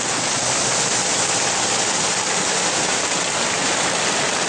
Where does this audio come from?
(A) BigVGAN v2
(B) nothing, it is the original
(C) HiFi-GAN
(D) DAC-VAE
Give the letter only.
B